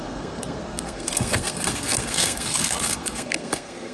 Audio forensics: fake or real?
fake